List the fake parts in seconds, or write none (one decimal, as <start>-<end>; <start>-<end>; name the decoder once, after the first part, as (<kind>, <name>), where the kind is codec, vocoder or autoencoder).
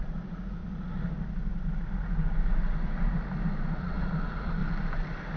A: 0.0-0.6 (vocoder, Vocos); 3.8-4.6